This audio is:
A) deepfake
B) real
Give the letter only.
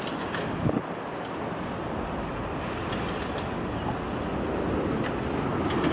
B